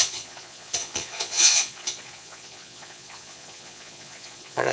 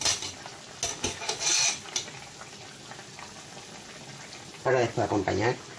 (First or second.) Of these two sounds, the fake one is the first